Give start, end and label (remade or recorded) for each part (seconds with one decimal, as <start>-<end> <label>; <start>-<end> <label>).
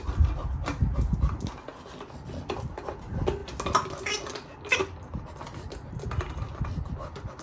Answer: 0.0-7.4 recorded